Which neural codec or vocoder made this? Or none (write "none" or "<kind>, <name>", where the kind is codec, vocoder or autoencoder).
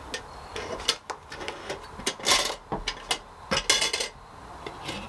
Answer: none